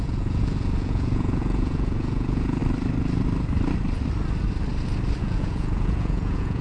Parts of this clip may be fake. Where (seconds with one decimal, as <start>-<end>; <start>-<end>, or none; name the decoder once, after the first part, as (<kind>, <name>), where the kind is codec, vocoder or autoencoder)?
0.0-2.6 (vocoder, Vocos); 5.2-6.6